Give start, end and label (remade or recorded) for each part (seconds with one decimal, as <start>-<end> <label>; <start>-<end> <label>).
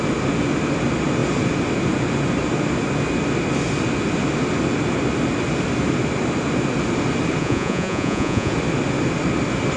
0.0-7.4 recorded; 7.4-8.5 remade; 8.5-9.8 recorded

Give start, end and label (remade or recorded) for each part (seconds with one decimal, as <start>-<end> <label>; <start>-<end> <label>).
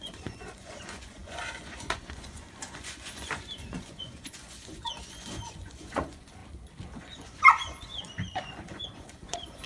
0.0-6.4 remade; 6.4-7.0 recorded; 7.0-9.7 remade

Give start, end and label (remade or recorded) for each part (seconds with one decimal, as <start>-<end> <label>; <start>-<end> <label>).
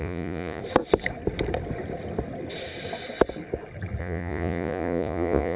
0.0-0.6 remade; 0.6-4.0 recorded; 4.0-5.6 remade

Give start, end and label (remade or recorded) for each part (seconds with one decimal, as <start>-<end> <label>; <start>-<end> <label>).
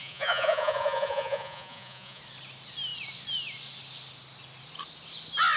0.0-2.2 remade; 2.2-5.6 recorded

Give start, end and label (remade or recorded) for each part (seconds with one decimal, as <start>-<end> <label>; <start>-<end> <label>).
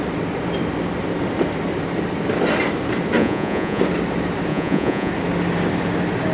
0.0-3.2 recorded; 3.2-3.8 remade; 3.8-4.5 recorded; 4.5-5.1 remade; 5.1-6.3 recorded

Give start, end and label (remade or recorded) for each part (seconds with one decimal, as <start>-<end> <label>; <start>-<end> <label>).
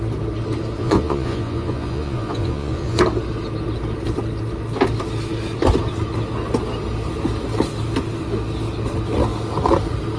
0.0-0.8 recorded; 0.8-3.0 remade; 3.0-10.2 recorded